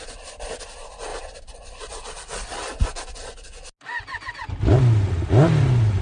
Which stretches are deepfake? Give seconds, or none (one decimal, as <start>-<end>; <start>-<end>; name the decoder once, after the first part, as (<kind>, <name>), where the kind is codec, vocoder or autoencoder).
none